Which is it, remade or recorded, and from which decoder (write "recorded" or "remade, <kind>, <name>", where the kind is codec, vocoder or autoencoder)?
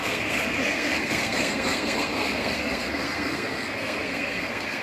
remade, codec, SNAC